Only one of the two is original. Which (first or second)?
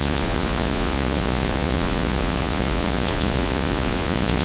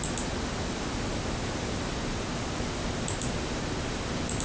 second